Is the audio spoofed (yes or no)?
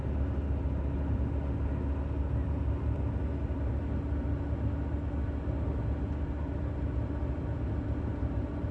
no